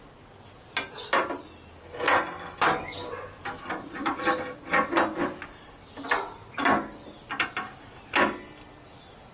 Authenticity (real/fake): real